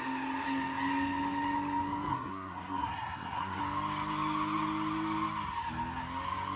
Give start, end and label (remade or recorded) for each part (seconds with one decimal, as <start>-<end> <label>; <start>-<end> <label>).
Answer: 0.0-2.1 recorded; 2.1-3.6 remade; 3.6-6.6 recorded